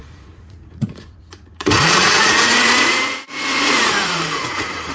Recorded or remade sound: remade